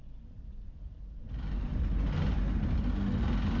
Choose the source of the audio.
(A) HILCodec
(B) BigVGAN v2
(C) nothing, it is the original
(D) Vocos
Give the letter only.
C